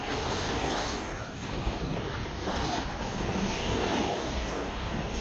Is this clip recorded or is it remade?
remade